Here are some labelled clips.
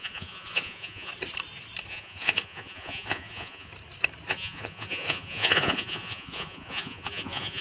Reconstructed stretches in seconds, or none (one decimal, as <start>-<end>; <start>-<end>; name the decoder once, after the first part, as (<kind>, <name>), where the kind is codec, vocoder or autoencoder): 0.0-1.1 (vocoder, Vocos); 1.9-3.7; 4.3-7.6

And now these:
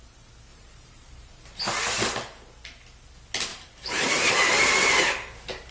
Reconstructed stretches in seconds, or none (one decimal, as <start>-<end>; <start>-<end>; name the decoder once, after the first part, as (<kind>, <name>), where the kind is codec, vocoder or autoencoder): 0.5-1.6 (vocoder, BigVGAN v2); 3.5-4.3

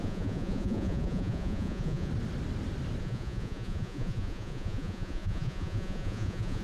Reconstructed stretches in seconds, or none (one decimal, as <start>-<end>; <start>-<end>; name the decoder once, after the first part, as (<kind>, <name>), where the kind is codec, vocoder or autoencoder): 0.0-2.1 (vocoder, Vocos); 3.0-6.6

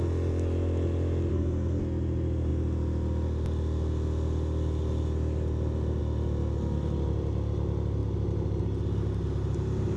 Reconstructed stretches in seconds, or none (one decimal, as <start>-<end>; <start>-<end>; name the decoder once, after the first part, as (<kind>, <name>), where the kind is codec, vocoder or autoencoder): 1.3-1.8 (codec, SNAC)

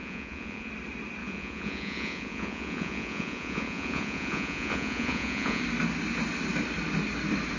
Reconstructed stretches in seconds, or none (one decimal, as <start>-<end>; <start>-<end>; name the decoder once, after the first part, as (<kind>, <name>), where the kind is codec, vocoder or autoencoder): 0.0-0.7 (vocoder, Vocos); 1.2-5.6

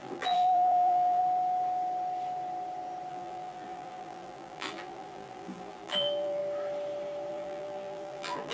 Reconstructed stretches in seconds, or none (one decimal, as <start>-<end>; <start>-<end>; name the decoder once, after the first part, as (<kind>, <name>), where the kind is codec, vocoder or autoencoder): 0.0-1.2 (vocoder, BigVGAN v2); 3.1-6.4; 7.3-8.5

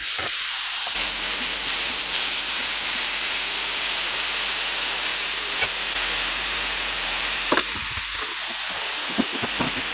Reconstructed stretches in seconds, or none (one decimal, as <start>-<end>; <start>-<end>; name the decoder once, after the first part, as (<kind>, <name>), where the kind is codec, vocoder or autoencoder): 0.0-7.8 (vocoder, BigVGAN v2)

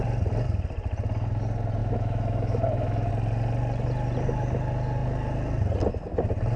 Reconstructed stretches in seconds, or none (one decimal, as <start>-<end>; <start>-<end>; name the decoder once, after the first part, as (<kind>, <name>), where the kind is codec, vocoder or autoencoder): 1.8-3.1 (autoencoder, DAC-VAE)